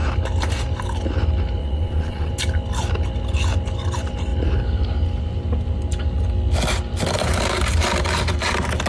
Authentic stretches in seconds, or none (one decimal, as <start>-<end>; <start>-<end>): 0.0-1.6; 2.3-8.9